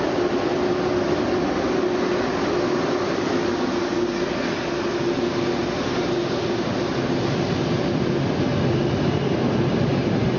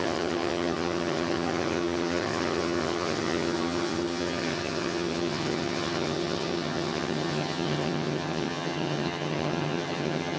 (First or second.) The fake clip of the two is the second